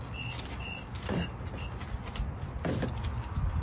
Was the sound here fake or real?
real